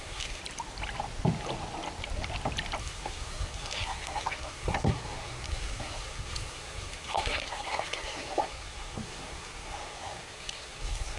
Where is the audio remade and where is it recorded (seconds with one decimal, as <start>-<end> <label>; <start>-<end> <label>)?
0.0-0.4 remade; 0.4-2.8 recorded; 2.8-11.2 remade